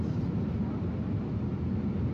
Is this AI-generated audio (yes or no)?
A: no